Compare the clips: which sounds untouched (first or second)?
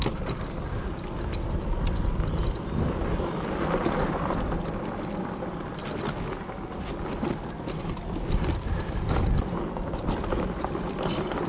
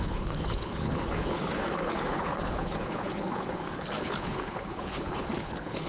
first